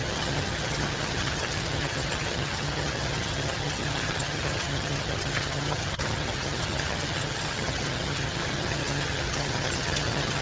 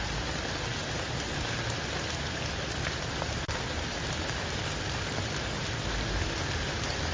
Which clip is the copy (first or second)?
first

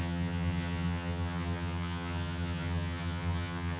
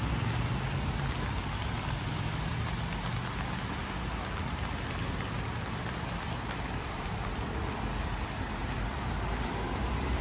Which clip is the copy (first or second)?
first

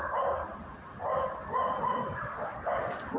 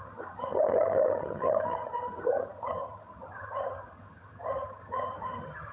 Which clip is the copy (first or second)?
second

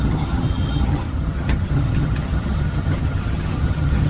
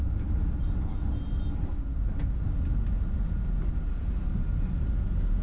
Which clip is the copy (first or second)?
first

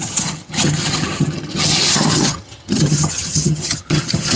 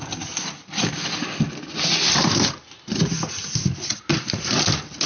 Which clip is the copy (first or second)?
first